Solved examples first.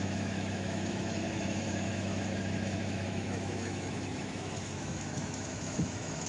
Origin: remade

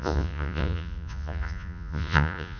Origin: remade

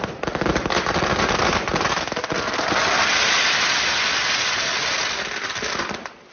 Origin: recorded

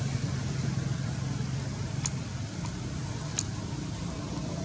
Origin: recorded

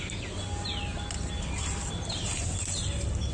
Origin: recorded